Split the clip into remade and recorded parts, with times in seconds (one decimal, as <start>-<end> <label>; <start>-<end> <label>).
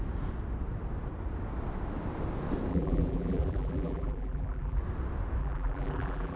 0.0-2.7 recorded; 2.7-4.8 remade; 4.8-5.4 recorded; 5.4-6.4 remade